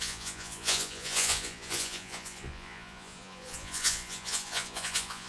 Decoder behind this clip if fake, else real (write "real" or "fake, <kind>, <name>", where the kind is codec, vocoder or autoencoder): fake, vocoder, Vocos